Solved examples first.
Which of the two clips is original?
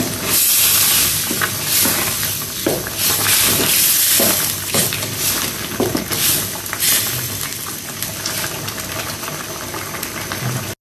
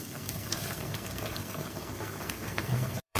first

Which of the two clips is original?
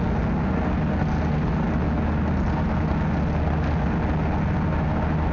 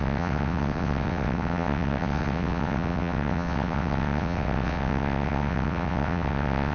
first